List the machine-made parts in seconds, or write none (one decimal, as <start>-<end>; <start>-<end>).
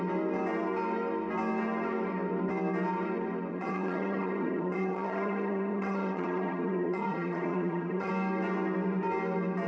3.5-8.1